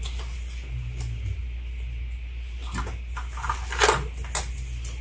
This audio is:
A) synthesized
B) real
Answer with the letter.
B